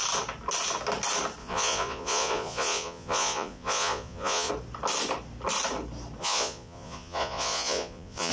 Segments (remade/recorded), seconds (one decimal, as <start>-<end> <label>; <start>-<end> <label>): 0.0-1.4 recorded; 1.4-4.5 remade; 4.5-6.2 recorded; 6.2-8.3 remade